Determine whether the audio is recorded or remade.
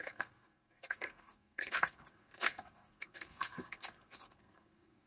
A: remade